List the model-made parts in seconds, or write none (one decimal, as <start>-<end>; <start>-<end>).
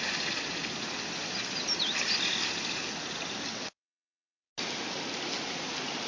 3.5-4.5